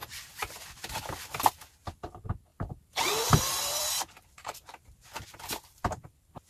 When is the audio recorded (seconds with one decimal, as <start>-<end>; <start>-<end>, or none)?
0.0-2.5